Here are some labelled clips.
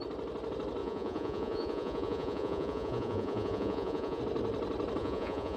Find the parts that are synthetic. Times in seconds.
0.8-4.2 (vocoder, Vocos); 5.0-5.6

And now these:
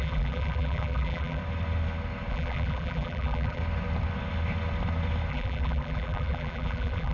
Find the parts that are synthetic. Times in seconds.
0.0-1.4 (vocoder, BigVGAN v2); 2.3-3.6; 5.3-7.1